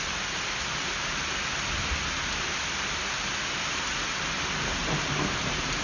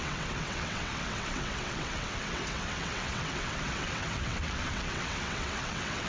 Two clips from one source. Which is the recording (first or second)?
first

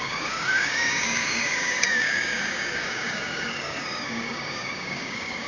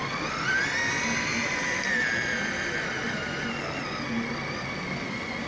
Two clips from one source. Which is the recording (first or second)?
second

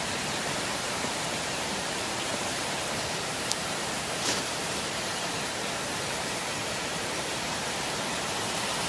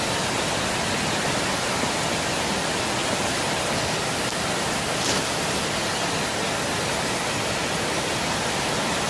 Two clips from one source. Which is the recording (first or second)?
second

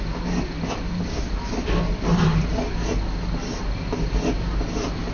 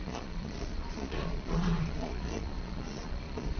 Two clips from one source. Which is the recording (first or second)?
first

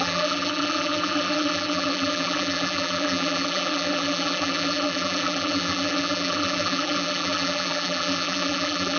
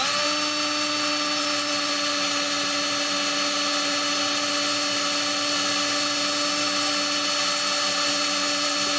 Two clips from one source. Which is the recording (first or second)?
second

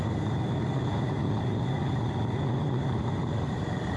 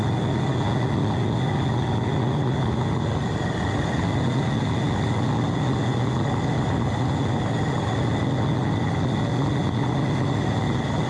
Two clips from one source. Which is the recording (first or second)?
second